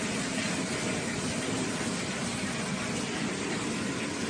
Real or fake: real